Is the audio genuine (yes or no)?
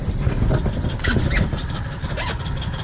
yes